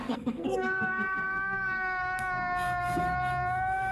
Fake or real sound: fake